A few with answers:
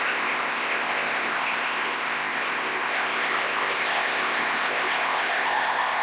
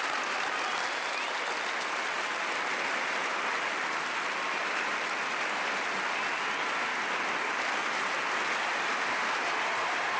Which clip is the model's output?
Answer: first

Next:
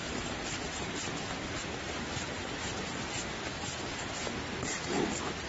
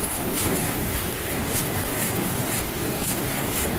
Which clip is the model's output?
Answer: second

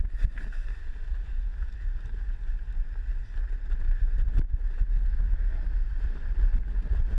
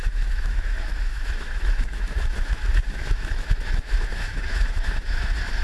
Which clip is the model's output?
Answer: second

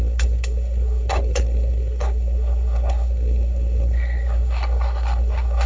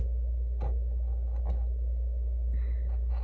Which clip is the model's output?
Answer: first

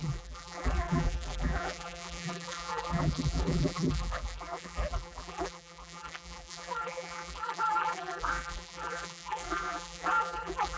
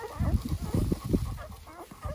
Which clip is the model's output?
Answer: first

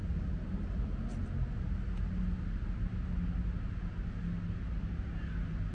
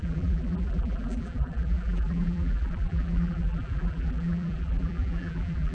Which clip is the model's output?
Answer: second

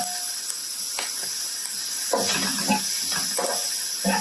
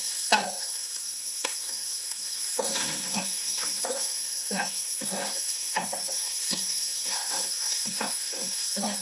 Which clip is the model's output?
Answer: second